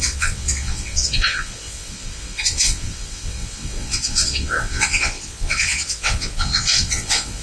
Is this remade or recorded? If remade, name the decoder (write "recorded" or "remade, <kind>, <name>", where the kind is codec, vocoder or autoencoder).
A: remade, vocoder, WaveNeXt